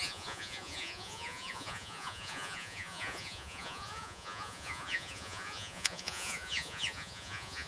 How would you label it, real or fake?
fake